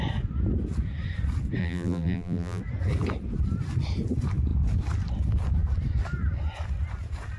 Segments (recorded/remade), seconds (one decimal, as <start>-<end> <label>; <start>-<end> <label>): 0.0-1.6 recorded; 1.6-2.6 remade; 2.6-7.4 recorded